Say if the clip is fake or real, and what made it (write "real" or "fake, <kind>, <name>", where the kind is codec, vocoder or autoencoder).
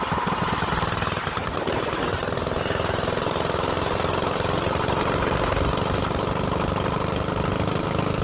real